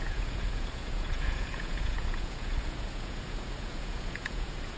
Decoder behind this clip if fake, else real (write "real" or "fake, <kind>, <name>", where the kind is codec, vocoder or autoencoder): fake, vocoder, Vocos